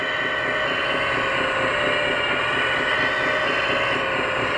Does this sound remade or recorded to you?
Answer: recorded